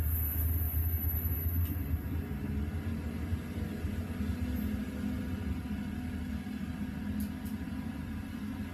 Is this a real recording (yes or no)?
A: yes